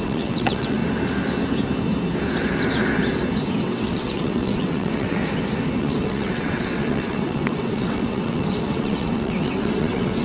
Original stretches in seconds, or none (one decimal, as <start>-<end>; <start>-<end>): 0.8-3.6; 5.2-5.8